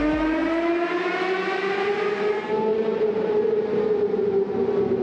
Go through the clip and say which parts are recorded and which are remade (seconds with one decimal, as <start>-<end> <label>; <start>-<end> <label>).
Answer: 0.0-2.7 recorded; 2.7-4.2 remade; 4.2-5.0 recorded